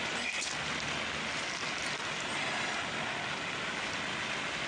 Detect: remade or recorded recorded